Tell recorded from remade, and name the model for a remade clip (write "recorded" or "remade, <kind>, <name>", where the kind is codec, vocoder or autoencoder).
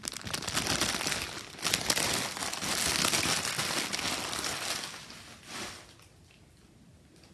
recorded